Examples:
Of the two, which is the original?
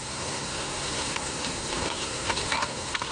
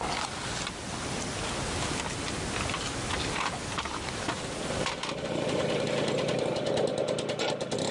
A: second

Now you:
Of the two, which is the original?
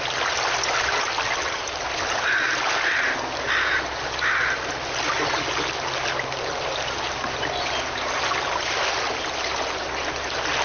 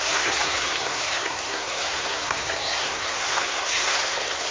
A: first